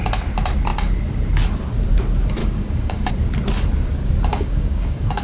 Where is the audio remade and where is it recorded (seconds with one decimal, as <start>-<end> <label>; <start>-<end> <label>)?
0.0-2.4 recorded; 2.4-3.1 remade; 3.1-4.3 recorded; 4.3-5.2 remade